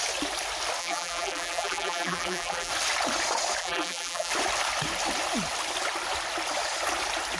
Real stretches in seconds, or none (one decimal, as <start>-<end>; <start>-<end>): 0.0-0.8; 2.7-3.6; 4.3-7.4